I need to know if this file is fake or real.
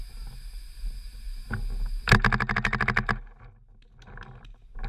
real